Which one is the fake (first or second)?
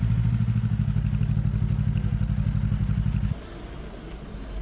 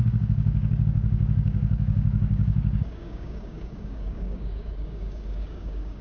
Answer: second